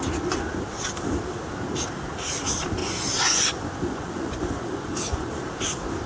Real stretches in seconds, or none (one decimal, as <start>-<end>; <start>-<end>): 0.0-2.8; 5.3-6.1